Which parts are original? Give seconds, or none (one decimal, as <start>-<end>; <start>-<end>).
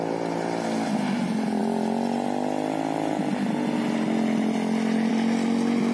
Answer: 0.0-5.9